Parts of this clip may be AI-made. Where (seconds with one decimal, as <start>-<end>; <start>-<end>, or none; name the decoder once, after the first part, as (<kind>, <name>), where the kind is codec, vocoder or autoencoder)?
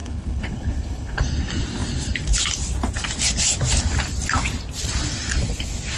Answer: 0.0-1.2 (codec, HILCodec)